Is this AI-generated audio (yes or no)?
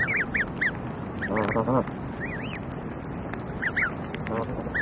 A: no